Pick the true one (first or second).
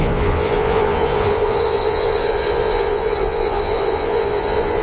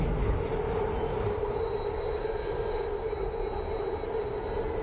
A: second